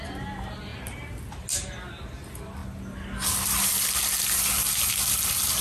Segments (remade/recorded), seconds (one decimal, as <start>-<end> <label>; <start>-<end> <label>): 0.0-5.6 recorded